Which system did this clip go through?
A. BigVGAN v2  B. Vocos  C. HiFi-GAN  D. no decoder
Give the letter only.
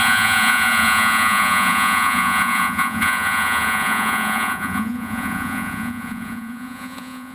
B